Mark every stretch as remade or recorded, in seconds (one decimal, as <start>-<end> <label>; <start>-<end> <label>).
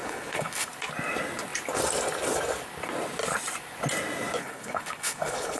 0.0-0.7 remade; 0.7-4.4 recorded; 4.4-5.6 remade